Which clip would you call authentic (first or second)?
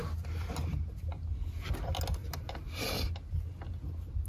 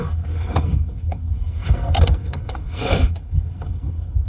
first